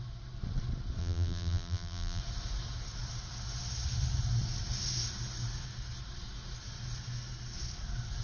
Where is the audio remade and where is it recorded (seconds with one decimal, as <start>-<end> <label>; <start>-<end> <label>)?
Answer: 0.0-1.0 recorded; 1.0-2.2 remade; 2.2-8.2 recorded